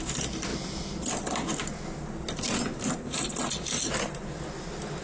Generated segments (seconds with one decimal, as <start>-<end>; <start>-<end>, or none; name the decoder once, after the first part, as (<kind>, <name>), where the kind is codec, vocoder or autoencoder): none